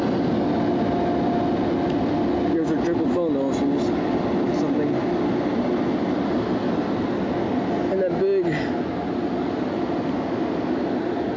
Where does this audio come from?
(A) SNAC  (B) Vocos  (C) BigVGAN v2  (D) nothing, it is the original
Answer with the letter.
D